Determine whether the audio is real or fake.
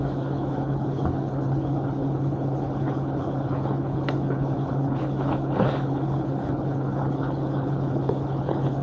fake